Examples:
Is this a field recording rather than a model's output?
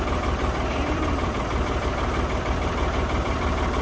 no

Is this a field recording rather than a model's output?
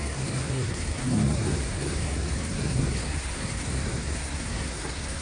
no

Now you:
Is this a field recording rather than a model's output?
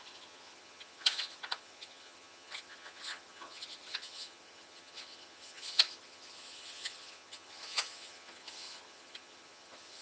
no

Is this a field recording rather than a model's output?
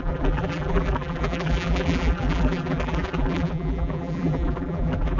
no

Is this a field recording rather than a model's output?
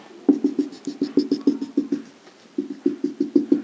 yes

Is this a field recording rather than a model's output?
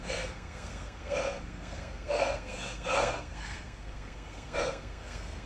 no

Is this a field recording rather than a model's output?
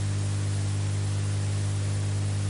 yes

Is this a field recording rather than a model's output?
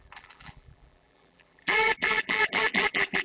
no